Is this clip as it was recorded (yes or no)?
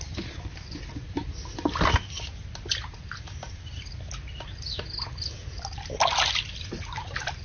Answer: yes